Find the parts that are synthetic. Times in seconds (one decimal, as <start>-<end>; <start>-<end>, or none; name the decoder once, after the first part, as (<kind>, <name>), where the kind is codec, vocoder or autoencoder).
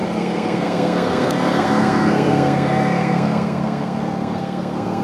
0.0-5.0 (codec, SNAC)